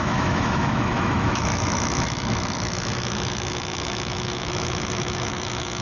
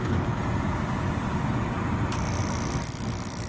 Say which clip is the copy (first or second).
first